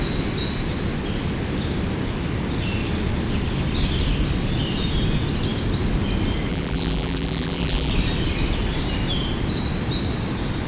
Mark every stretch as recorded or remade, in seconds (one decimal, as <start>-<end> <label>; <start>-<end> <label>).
0.0-6.5 recorded; 6.5-7.9 remade; 7.9-10.7 recorded